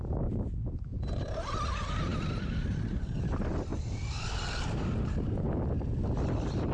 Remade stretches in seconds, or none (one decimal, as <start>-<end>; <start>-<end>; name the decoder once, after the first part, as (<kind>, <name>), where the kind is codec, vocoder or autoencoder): 0.9-1.5 (vocoder, BigVGAN v2); 3.7-4.5